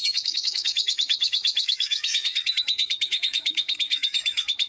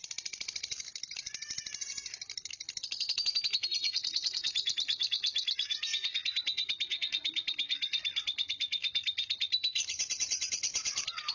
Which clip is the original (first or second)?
second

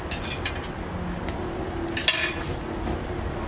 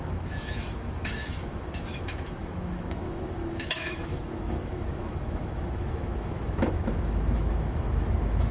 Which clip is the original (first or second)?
first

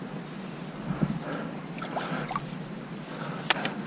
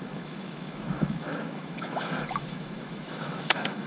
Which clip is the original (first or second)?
first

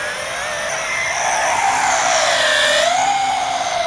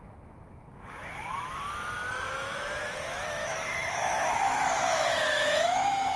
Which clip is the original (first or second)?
first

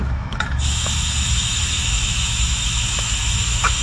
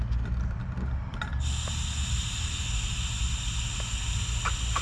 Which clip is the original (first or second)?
second